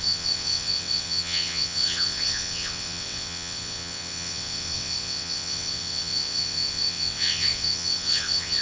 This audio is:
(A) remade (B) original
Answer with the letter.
A